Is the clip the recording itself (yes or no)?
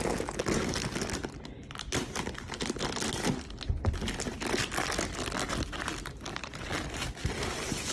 yes